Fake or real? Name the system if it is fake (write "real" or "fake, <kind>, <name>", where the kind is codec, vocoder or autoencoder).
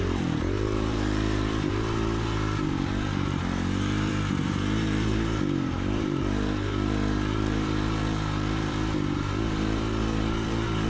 fake, vocoder, BigVGAN v2